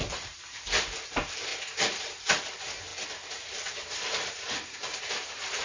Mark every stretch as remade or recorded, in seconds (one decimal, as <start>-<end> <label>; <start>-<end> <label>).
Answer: 0.0-1.5 remade; 1.5-2.0 recorded; 2.0-2.9 remade; 2.9-4.0 recorded; 4.0-5.6 remade